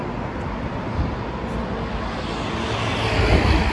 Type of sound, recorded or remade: recorded